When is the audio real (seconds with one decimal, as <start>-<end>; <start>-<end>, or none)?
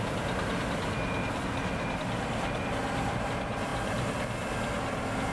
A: 0.0-5.3